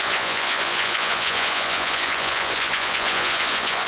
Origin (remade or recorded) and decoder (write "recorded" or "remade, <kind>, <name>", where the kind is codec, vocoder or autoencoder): remade, vocoder, Vocos